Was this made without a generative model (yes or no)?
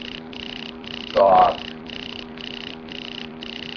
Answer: no